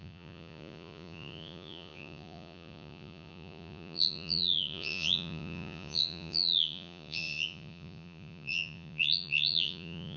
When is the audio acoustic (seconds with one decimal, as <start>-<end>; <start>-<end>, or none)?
none

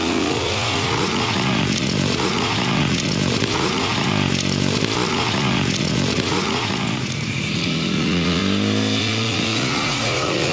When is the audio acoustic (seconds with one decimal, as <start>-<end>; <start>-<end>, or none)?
4.1-5.1; 8.4-9.0